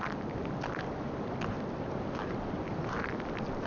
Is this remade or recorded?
recorded